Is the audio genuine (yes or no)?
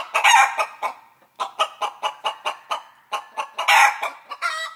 yes